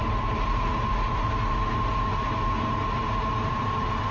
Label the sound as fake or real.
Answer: real